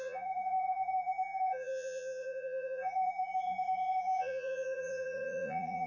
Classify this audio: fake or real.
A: fake